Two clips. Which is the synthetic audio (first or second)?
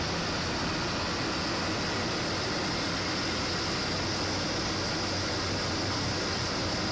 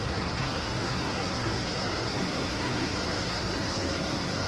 second